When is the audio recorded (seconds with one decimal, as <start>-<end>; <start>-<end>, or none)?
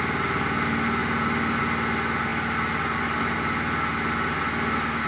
0.0-5.1